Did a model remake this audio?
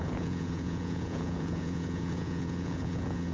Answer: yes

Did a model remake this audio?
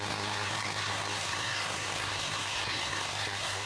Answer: yes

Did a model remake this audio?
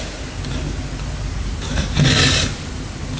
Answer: no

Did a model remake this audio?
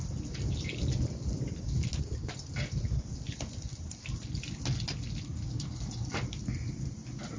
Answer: no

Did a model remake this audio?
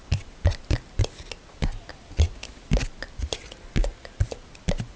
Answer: no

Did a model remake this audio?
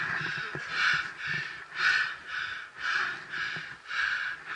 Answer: no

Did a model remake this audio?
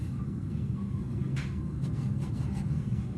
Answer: yes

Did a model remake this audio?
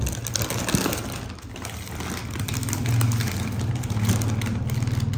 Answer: no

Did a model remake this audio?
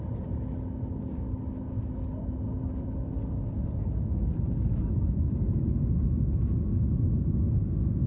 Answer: no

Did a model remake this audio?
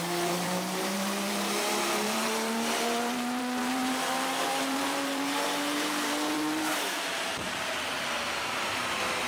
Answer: yes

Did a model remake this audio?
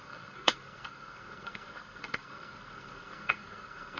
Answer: yes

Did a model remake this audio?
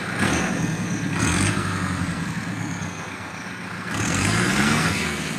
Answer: yes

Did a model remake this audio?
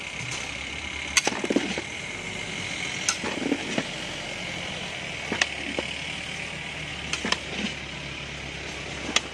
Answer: no